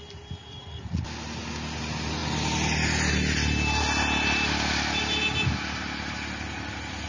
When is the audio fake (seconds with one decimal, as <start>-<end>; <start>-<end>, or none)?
0.4-1.0